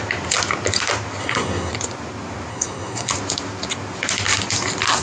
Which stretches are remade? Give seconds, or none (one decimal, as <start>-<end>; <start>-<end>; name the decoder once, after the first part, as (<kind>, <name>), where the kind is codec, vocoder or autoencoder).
1.2-1.7 (codec, SNAC); 2.5-3.1